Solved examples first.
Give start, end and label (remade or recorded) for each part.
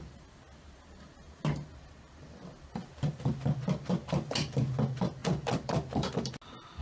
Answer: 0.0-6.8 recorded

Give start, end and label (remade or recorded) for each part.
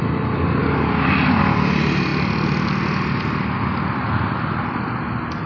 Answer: 0.0-5.5 recorded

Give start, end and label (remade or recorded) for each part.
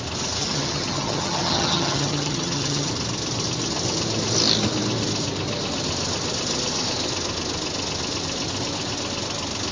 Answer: 0.0-0.4 recorded; 0.4-2.9 remade; 2.9-9.7 recorded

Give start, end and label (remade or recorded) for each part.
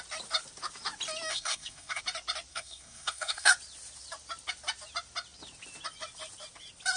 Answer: 0.0-1.3 recorded; 1.3-2.0 remade; 2.0-2.5 recorded; 2.5-3.5 remade; 3.5-7.0 recorded